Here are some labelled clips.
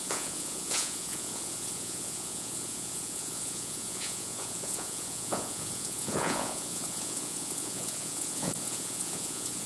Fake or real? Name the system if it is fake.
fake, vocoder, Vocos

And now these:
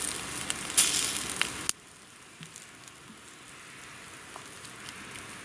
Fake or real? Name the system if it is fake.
real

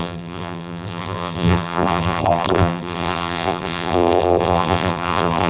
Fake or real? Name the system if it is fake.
fake, vocoder, BigVGAN v2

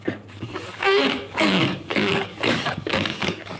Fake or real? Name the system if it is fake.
fake, codec, DAC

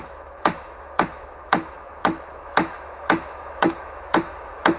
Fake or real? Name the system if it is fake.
fake, autoencoder, DAC-VAE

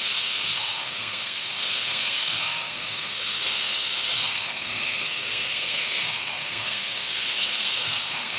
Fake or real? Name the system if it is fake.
fake, codec, SNAC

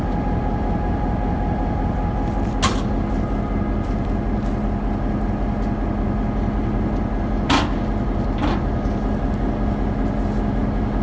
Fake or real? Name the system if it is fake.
real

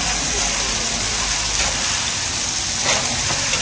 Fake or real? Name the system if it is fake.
real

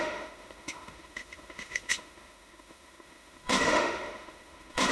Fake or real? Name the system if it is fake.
fake, autoencoder, DAC-VAE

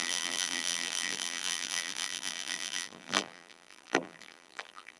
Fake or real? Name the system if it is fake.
fake, vocoder, BigVGAN v2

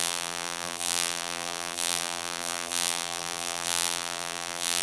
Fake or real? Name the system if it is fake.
fake, vocoder, BigVGAN v2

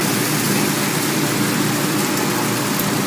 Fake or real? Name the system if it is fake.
real